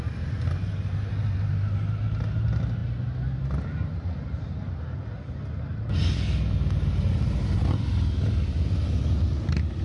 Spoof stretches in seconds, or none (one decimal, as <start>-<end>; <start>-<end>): none